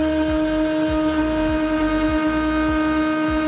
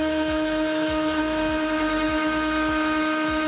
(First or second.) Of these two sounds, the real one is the first